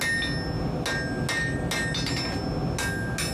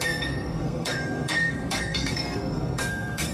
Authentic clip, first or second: first